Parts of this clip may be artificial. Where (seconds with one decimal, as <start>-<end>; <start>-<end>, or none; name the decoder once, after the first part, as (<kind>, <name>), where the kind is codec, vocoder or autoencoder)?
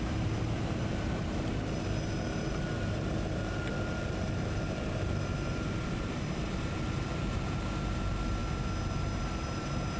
0.0-8.4 (vocoder, BigVGAN v2); 9.0-10.0